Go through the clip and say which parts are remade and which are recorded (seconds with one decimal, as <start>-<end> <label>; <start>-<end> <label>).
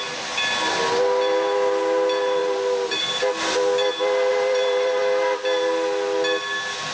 0.0-2.4 recorded; 2.4-3.0 remade; 3.0-4.3 recorded; 4.3-5.0 remade; 5.0-6.9 recorded